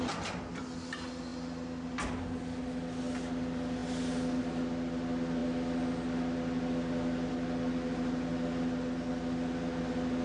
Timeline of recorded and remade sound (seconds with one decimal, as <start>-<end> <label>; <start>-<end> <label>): 0.0-10.2 recorded